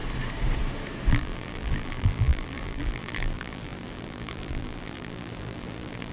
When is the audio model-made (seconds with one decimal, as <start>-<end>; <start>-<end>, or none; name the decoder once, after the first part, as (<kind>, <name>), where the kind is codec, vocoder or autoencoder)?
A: 1.1-6.1 (vocoder, BigVGAN v2)

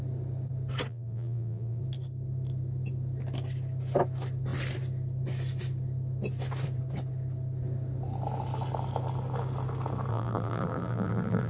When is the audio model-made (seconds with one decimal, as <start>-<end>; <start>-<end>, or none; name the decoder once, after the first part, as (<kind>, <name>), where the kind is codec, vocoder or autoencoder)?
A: 0.9-1.8 (vocoder, BigVGAN v2); 10.1-11.5